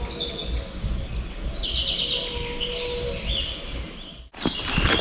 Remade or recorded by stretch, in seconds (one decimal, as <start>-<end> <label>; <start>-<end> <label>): 0.0-5.0 recorded